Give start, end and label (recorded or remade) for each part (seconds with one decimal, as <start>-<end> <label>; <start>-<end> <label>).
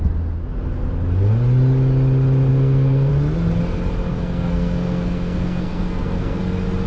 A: 0.0-2.5 recorded; 2.5-3.1 remade; 3.1-4.1 recorded; 4.1-6.4 remade; 6.4-6.9 recorded